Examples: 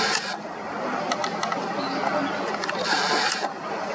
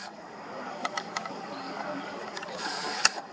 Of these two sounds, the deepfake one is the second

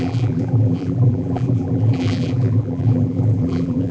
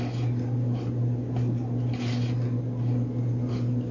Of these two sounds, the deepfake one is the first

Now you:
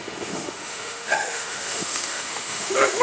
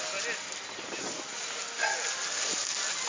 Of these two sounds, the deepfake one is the first